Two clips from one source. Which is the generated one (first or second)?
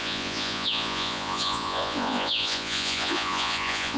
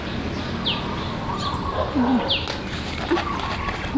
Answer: first